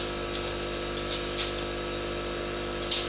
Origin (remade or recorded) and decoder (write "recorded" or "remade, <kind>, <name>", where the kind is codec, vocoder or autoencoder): recorded